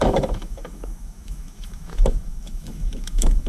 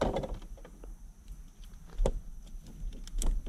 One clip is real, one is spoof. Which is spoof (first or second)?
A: first